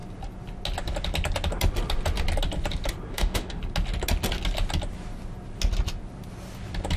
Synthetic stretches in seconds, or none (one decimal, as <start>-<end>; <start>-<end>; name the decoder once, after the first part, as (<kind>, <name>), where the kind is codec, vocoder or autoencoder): 3.1-3.6 (autoencoder, DAC-VAE)